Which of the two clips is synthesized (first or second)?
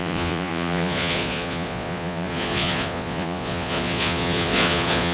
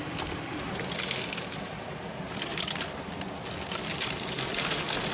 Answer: first